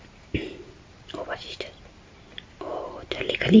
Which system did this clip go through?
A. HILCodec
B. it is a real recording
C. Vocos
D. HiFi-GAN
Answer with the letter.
B